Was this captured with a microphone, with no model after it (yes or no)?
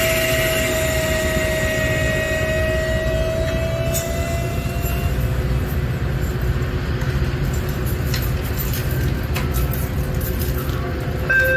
yes